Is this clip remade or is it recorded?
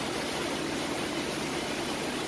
recorded